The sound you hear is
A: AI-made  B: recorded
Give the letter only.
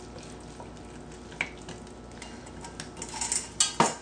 B